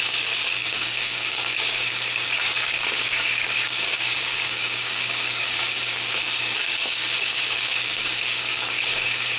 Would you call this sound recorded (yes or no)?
no